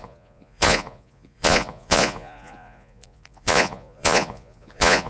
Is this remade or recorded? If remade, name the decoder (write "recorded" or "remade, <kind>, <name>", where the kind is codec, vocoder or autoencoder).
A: remade, vocoder, Vocos